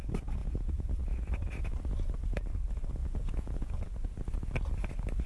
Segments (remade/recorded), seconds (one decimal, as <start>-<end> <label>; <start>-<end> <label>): 0.0-0.4 recorded; 0.4-1.0 remade; 1.0-3.0 recorded; 3.0-3.8 remade; 3.8-5.3 recorded